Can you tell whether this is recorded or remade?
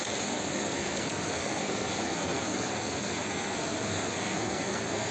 remade